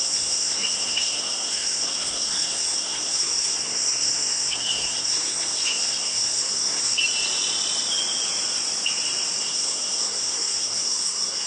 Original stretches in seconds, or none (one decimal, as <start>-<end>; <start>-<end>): 7.0-9.4